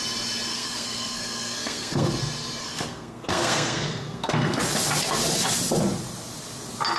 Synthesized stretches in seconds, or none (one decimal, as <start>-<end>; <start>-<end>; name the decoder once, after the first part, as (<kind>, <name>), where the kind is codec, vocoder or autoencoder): 0.5-2.1 (codec, SNAC); 2.6-4.6